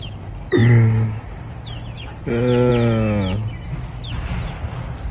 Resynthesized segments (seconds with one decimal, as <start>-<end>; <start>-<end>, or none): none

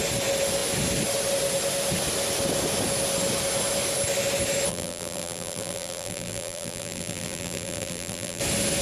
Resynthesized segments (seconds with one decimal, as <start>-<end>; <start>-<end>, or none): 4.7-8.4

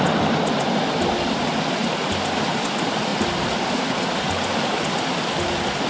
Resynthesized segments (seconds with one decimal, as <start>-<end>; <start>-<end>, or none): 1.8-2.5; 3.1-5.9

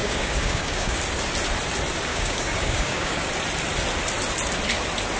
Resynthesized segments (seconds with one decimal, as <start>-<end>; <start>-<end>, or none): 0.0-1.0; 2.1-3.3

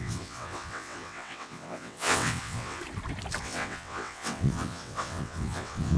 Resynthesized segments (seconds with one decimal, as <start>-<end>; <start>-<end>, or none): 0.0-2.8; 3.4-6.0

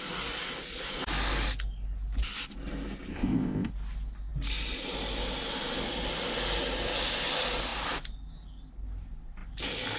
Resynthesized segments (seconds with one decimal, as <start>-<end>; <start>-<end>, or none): 3.1-3.7

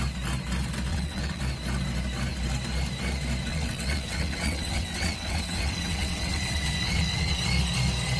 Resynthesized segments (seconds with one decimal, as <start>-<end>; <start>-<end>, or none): 0.9-1.4; 3.5-7.4